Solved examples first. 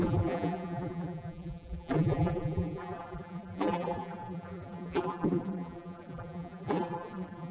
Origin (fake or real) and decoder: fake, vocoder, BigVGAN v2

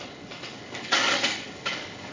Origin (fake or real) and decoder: fake, codec, DAC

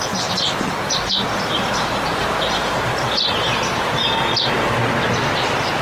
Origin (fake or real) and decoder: real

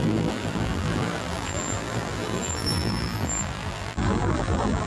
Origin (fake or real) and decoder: fake, vocoder, BigVGAN v2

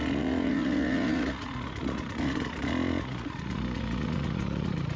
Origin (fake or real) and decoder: fake, vocoder, Vocos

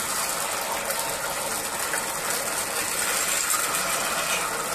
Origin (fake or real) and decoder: real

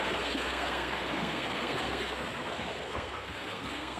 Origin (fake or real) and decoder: fake, codec, SNAC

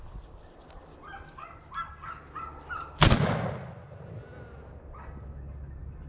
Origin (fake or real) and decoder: real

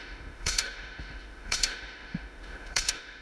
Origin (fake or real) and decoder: fake, autoencoder, DAC-VAE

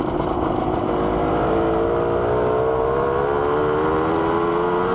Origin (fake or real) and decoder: real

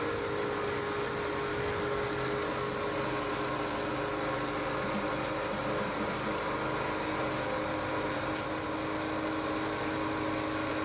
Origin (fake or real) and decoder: real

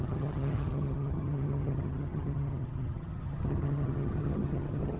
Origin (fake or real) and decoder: fake, vocoder, HiFi-GAN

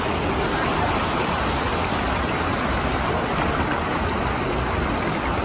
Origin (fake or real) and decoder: real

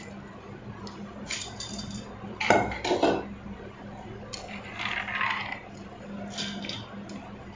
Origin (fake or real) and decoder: real